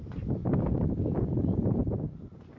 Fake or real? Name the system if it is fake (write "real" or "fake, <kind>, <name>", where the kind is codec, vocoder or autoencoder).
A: real